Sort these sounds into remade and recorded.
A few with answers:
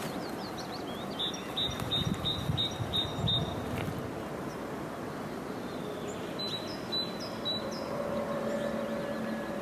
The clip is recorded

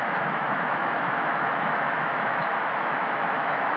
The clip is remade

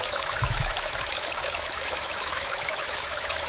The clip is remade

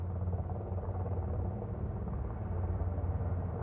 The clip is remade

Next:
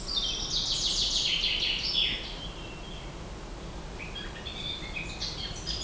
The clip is recorded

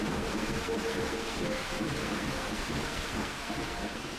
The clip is remade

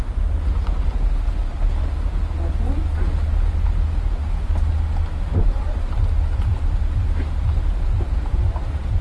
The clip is recorded